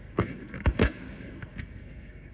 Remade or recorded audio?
remade